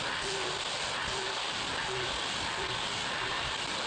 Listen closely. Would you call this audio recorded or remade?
recorded